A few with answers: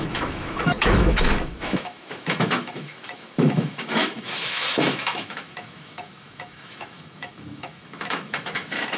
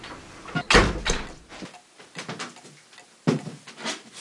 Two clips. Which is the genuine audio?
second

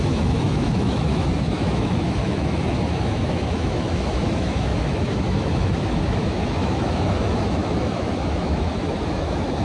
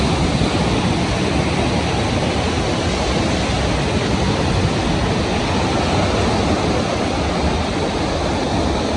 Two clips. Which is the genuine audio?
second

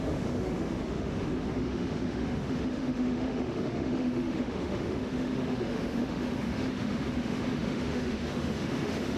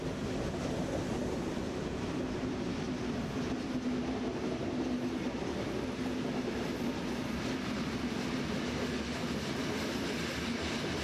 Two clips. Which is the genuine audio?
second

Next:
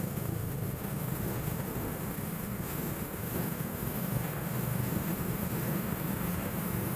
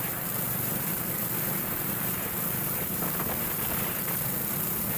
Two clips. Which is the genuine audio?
second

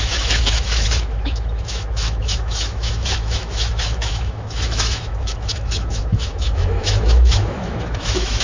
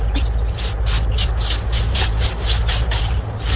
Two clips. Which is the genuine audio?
second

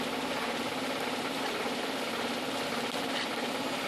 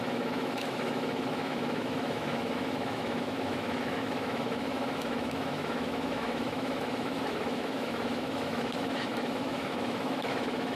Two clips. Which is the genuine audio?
first